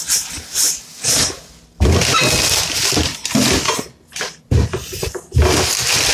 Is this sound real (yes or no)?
yes